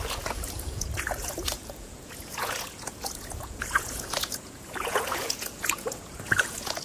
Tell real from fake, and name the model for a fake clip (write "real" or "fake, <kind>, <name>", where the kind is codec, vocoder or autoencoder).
fake, vocoder, Vocos